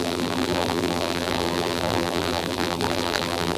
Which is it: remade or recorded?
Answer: remade